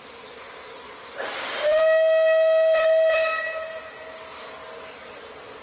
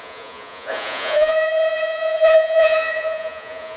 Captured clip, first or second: first